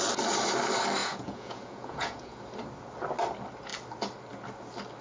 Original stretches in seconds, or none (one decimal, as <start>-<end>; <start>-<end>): 0.0-1.0; 2.4-5.0